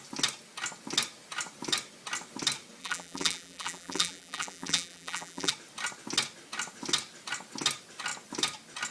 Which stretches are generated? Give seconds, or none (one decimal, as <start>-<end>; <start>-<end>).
2.8-5.5